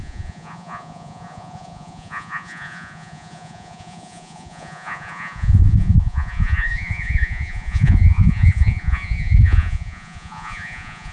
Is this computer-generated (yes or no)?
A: yes